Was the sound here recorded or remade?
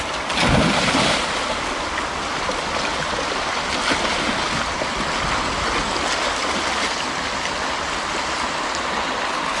recorded